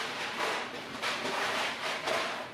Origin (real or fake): fake